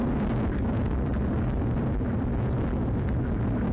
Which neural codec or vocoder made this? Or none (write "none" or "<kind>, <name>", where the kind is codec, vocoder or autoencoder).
vocoder, BigVGAN v2